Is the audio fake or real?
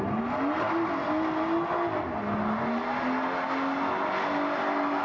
real